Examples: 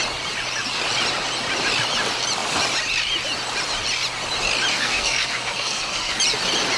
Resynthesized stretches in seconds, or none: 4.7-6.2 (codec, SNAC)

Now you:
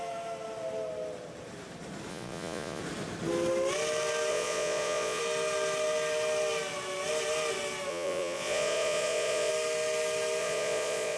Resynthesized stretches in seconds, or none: 2.1-2.8 (vocoder, Vocos); 4.3-5.2; 7.9-9.5; 10.4-11.2

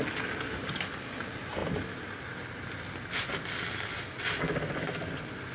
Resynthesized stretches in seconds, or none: none

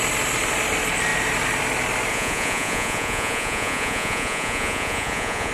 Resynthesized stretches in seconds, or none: 2.1-5.5 (vocoder, Vocos)

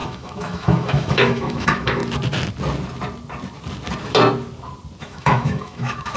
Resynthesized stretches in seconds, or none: 0.0-2.0 (autoencoder, DAC-VAE); 5.0-6.2

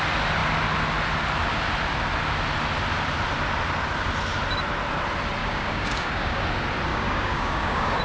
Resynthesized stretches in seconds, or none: 5.4-6.4 (codec, DAC); 6.9-8.0